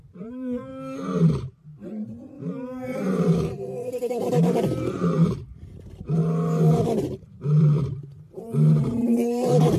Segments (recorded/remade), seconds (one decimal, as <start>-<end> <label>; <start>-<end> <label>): 0.0-0.7 remade; 0.7-1.3 recorded; 1.3-6.2 remade; 6.2-7.0 recorded; 7.0-9.8 remade